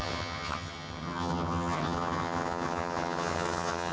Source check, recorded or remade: remade